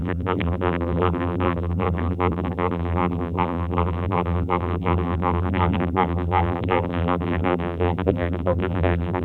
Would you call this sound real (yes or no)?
no